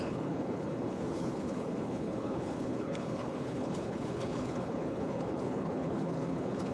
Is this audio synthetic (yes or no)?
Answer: yes